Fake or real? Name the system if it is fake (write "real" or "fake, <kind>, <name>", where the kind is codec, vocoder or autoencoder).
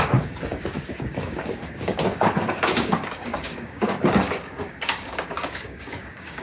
fake, codec, DAC